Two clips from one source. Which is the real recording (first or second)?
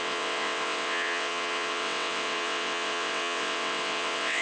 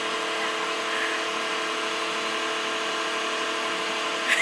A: second